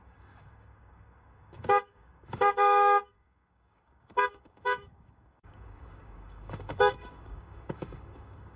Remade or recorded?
remade